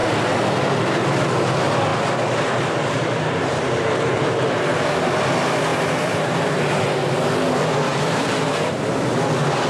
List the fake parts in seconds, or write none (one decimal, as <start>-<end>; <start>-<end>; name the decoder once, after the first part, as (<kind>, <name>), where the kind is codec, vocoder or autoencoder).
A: 1.9-4.6 (vocoder, BigVGAN v2); 5.7-6.6; 7.9-9.1